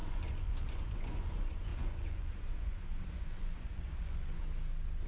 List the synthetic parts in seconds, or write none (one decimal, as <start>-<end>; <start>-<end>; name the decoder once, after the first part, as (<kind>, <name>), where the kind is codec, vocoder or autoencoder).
0.0-4.4 (vocoder, Vocos)